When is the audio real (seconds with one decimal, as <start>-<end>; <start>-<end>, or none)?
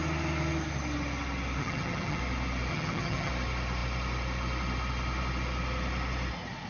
0.0-1.6; 2.2-2.7; 3.3-6.7